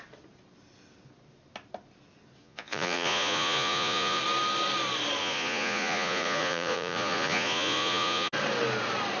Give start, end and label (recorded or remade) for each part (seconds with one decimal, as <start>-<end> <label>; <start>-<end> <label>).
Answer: 0.0-2.4 recorded; 2.4-4.2 remade; 4.2-5.2 recorded; 5.2-8.3 remade; 8.3-9.2 recorded